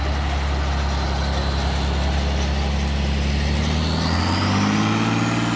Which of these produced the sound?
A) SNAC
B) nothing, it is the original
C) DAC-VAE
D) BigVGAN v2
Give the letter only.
B